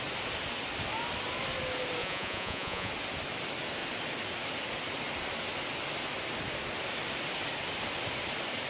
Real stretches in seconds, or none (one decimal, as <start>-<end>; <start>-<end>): 0.0-2.0; 2.9-8.7